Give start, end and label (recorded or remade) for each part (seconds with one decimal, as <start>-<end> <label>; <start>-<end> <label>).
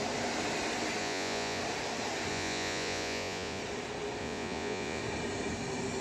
0.0-1.0 recorded; 1.0-1.6 remade; 1.6-2.3 recorded; 2.3-3.6 remade; 3.6-4.2 recorded; 4.2-5.0 remade; 5.0-6.0 recorded